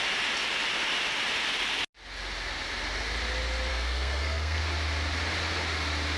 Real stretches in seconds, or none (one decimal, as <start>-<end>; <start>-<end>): 0.0-3.7; 4.6-6.2